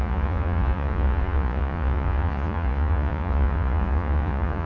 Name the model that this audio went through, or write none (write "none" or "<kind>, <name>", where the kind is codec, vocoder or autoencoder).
vocoder, Vocos